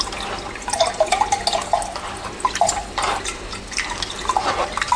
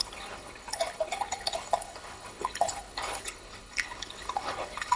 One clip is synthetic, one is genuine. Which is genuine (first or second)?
first